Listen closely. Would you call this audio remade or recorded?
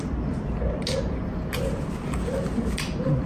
recorded